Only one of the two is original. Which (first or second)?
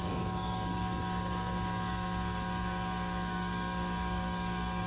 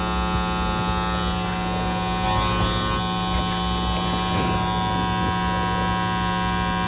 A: second